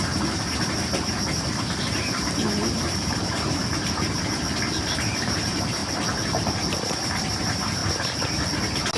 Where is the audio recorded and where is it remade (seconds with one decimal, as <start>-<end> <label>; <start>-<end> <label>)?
0.0-3.6 remade; 3.6-5.0 recorded; 5.0-5.8 remade; 5.8-6.7 recorded; 6.7-7.8 remade; 7.8-9.0 recorded